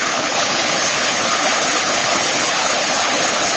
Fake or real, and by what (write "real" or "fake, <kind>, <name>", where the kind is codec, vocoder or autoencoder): fake, codec, HILCodec